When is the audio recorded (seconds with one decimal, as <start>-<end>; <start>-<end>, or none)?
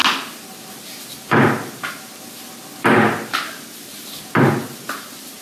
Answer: 0.0-5.4